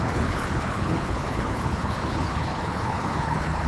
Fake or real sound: fake